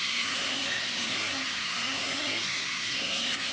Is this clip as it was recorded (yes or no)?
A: no